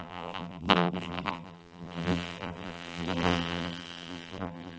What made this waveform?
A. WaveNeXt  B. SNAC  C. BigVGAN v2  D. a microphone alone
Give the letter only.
C